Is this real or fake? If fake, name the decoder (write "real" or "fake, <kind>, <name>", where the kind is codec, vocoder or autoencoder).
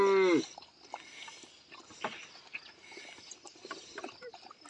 real